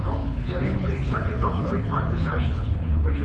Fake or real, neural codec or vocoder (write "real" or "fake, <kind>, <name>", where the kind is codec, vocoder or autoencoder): fake, codec, HILCodec